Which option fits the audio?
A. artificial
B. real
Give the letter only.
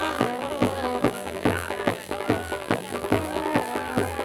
A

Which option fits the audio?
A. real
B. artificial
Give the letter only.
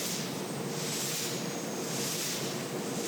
A